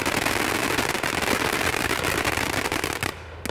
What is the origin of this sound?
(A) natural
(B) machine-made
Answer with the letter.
A